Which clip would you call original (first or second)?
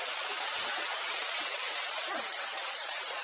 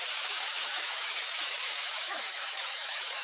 first